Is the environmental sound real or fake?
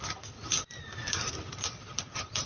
real